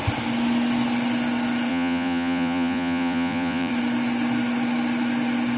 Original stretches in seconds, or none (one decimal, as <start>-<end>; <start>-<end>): 0.0-1.7; 3.7-5.6